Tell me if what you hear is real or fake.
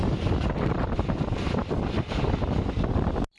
real